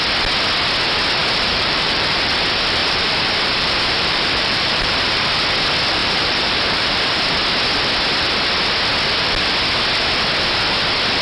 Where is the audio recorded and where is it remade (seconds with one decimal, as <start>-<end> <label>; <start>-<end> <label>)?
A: 0.0-1.2 recorded; 1.2-2.3 remade; 2.3-2.8 recorded; 2.8-5.2 remade; 5.2-6.0 recorded; 6.0-7.3 remade; 7.3-11.2 recorded